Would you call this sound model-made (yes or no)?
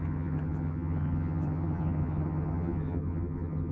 yes